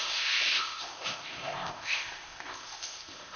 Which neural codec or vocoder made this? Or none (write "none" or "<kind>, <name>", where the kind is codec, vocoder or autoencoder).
codec, ZipCodec